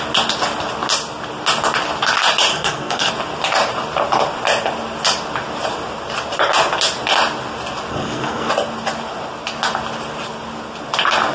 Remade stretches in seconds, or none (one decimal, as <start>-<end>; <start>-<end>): 2.5-3.1; 7.9-8.5